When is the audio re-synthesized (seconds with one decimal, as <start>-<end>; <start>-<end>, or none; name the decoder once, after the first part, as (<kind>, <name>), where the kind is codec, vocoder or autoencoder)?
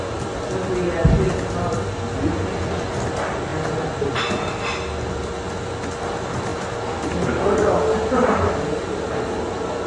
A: none